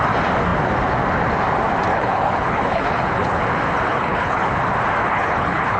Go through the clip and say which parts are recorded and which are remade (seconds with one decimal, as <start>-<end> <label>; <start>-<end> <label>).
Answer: 0.0-1.9 recorded; 1.9-3.4 remade; 3.4-3.9 recorded; 3.9-4.5 remade; 4.5-5.0 recorded; 5.0-5.8 remade